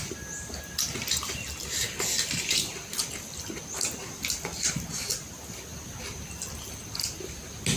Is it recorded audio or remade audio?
recorded